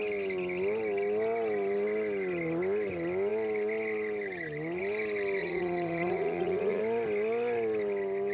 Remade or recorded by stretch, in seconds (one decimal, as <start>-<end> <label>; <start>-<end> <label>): 0.0-5.4 recorded; 5.4-6.8 remade; 6.8-8.3 recorded

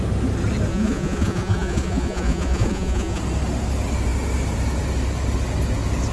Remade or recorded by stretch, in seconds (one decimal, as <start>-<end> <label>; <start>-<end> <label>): 0.0-0.7 recorded; 0.7-3.2 remade; 3.2-6.1 recorded

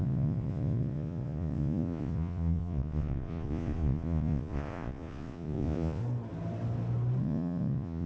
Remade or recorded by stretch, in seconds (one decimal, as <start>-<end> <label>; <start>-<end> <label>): 0.0-6.0 remade; 6.0-7.2 recorded; 7.2-8.1 remade